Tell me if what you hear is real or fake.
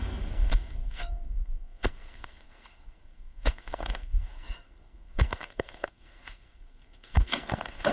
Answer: fake